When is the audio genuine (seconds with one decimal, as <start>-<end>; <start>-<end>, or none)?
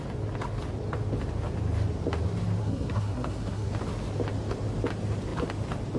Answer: 0.0-2.6; 3.7-6.0